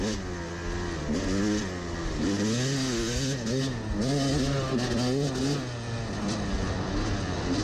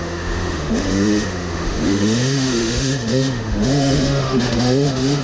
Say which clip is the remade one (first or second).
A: second